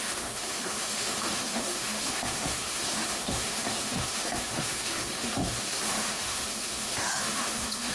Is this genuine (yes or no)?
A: no